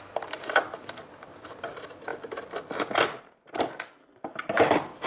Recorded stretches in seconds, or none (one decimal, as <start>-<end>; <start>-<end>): 0.0-5.1